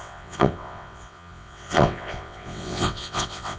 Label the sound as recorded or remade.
remade